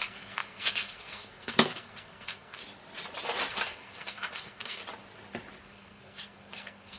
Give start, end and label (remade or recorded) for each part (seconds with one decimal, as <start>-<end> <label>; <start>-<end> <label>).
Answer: 0.0-2.6 remade; 2.6-3.5 recorded; 3.5-4.8 remade; 4.8-5.6 recorded; 5.6-7.0 remade